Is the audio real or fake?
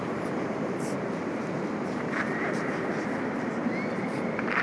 fake